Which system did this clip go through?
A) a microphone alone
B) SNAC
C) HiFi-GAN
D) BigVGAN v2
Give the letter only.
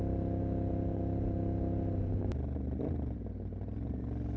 A